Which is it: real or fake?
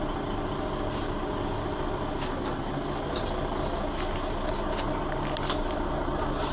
real